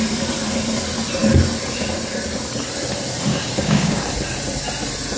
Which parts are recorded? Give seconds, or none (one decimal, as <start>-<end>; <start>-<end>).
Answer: 0.0-3.3; 4.0-5.2